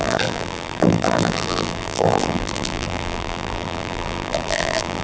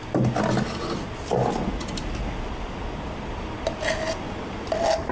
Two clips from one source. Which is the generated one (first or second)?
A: first